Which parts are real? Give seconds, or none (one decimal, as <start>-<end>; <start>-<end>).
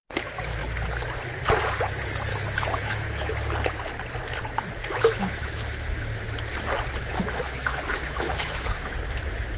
0.0-2.3; 3.3-4.8; 6.2-7.0; 8.9-9.6